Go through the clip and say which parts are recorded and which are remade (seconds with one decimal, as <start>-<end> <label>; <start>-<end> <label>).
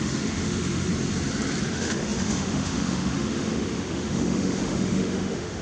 0.0-0.9 remade; 0.9-1.7 recorded; 1.7-5.6 remade